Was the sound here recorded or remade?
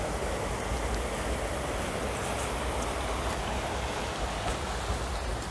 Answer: recorded